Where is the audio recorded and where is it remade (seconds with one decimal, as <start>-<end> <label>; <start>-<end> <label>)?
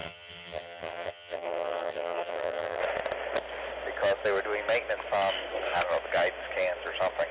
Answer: 0.0-2.8 remade; 2.8-7.3 recorded